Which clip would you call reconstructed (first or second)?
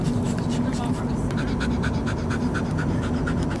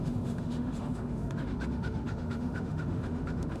second